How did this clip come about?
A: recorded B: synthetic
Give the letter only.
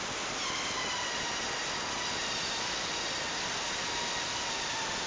A